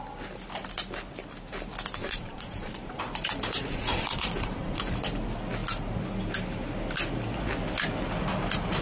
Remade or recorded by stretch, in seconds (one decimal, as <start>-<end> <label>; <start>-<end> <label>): 0.0-2.0 recorded; 2.0-3.0 remade; 3.0-3.6 recorded; 3.6-4.8 remade; 4.8-8.8 recorded